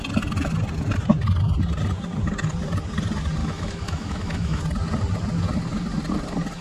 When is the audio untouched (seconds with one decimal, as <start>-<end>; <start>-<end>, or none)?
0.0-3.4; 4.6-6.6